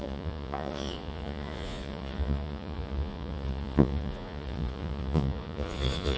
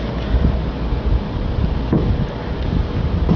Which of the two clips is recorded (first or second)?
second